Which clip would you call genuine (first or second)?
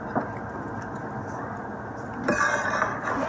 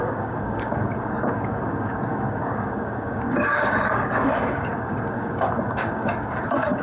first